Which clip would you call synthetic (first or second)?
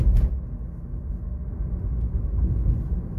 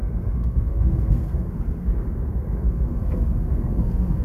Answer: second